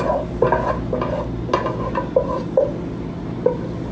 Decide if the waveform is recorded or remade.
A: recorded